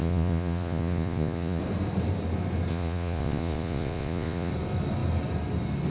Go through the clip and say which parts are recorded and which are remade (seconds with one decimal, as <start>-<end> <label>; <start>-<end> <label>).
0.0-1.6 remade; 1.6-2.7 recorded; 2.7-4.5 remade; 4.5-5.9 recorded